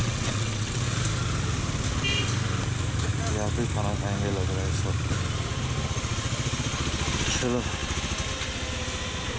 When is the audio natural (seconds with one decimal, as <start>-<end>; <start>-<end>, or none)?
0.8-9.4

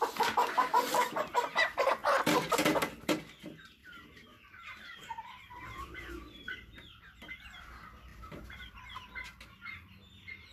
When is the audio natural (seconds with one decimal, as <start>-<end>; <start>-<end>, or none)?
0.0-3.8; 7.3-8.1; 8.8-10.5

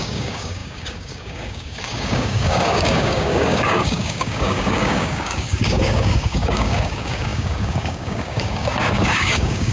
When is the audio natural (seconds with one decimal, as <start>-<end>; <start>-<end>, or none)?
none

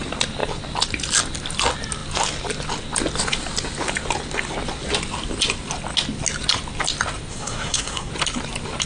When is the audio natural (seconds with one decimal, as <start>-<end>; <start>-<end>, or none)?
0.0-7.3; 8.1-8.9

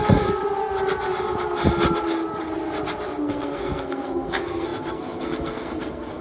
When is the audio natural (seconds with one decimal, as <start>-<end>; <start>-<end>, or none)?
0.4-3.2

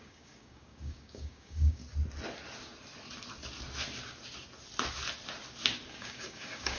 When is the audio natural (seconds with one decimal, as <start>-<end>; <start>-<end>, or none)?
1.8-5.9

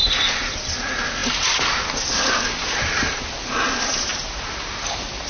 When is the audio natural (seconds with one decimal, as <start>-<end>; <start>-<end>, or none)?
0.0-5.3